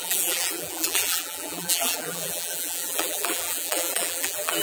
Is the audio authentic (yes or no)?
no